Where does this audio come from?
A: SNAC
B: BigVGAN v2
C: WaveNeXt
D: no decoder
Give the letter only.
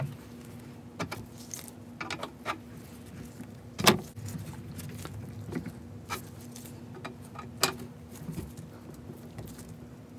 D